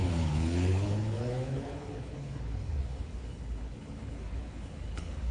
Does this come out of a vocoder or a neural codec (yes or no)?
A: yes